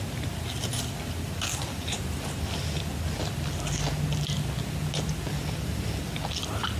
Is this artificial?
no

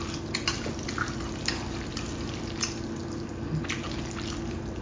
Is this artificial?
no